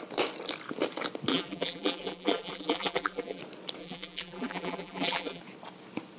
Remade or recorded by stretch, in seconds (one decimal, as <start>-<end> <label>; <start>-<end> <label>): 0.0-1.3 recorded; 1.3-3.4 remade; 3.4-3.8 recorded; 3.8-5.4 remade; 5.4-6.2 recorded